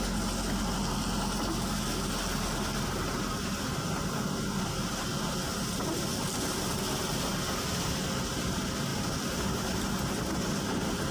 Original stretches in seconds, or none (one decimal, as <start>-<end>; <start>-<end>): 0.0-8.9; 9.5-11.1